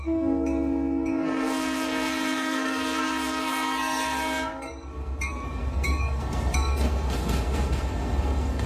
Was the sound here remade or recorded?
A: remade